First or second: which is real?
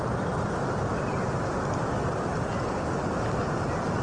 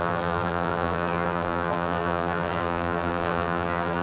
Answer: first